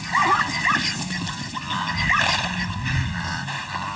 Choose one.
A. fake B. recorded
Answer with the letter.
B